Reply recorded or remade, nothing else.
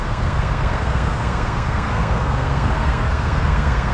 remade